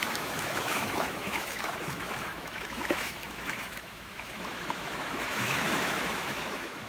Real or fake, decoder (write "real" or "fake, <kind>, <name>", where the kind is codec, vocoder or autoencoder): fake, autoencoder, DAC-VAE